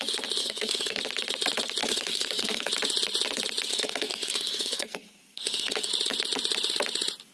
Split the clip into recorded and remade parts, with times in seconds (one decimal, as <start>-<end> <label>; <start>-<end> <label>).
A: 0.0-0.4 recorded; 0.4-1.0 remade; 1.0-1.8 recorded; 1.8-2.7 remade; 2.7-3.7 recorded; 3.7-5.9 remade; 5.9-7.3 recorded